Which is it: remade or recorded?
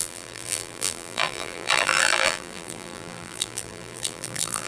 remade